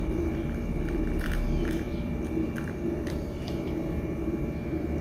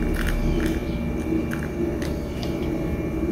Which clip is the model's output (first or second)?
first